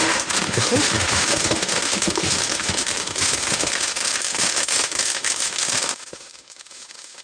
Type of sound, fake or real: fake